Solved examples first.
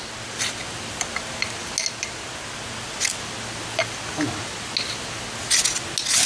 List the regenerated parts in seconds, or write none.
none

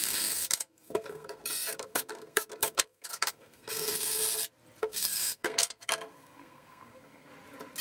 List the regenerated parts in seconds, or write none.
0.0-4.2 (codec, SNAC); 4.8-7.3